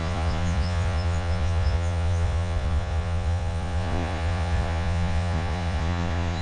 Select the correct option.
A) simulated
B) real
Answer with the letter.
A